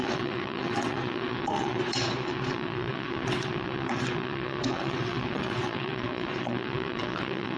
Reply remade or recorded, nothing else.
remade